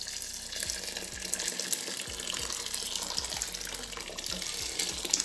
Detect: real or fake real